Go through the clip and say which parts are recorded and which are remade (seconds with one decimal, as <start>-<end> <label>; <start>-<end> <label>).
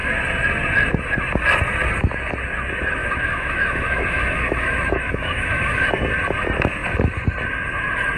0.0-3.0 recorded; 3.0-5.9 remade; 5.9-8.2 recorded